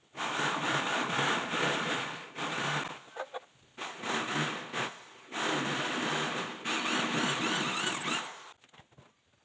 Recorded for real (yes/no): yes